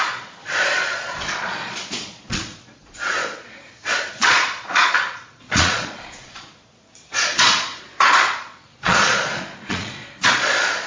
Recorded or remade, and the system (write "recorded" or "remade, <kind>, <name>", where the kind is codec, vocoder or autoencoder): remade, vocoder, Vocos